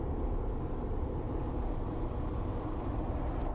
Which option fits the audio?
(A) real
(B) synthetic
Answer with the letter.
A